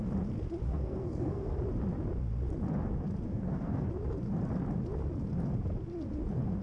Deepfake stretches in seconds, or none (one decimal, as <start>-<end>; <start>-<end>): 0.7-1.6; 3.3-3.9

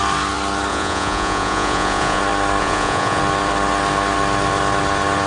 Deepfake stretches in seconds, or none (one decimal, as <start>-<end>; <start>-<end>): 0.7-2.2; 2.6-3.2

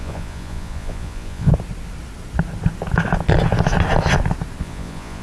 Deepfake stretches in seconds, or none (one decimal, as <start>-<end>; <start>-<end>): 0.0-1.5; 4.6-5.2

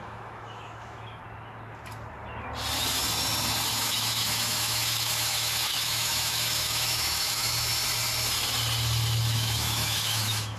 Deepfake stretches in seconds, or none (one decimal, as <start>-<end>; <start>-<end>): 0.0-1.2; 3.7-7.7; 9.2-10.6

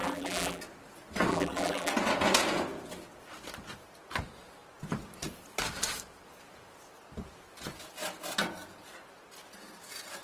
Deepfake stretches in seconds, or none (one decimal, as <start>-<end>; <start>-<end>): 0.0-0.6; 1.3-1.9